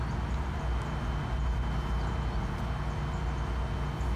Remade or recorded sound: recorded